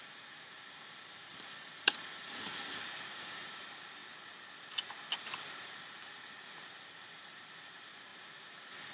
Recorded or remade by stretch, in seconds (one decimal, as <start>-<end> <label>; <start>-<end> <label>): 0.0-4.0 remade; 4.0-5.2 recorded; 5.2-8.9 remade